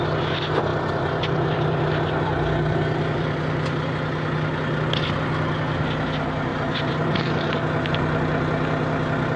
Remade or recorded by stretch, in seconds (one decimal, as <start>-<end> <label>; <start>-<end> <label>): 0.0-0.7 recorded; 0.7-3.9 remade; 3.9-6.5 recorded; 6.5-7.3 remade; 7.3-9.4 recorded